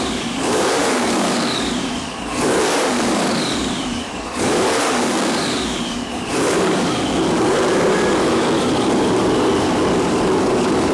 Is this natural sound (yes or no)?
no